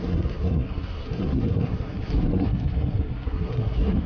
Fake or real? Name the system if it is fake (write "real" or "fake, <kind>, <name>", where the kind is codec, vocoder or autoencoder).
fake, codec, SNAC